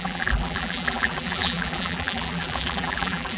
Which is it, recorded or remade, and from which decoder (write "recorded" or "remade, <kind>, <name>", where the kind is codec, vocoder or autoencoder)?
remade, vocoder, BigVGAN v2